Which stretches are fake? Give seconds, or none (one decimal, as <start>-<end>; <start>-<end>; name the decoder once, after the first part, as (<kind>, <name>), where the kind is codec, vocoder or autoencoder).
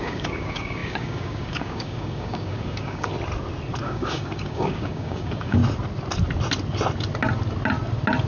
0.0-3.1 (codec, DAC); 3.8-5.6